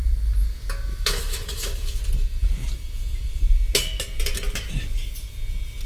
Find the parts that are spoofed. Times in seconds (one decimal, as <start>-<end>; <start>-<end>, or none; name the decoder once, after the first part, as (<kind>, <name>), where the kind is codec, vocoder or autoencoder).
0.9-2.0 (autoencoder, DAC-VAE)